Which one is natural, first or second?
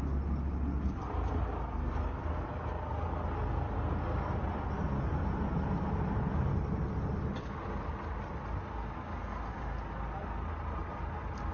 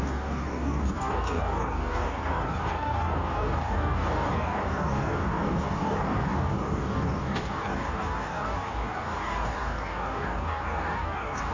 first